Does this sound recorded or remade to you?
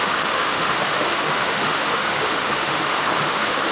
remade